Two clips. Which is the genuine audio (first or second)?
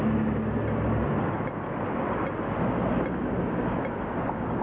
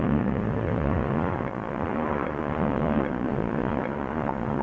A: first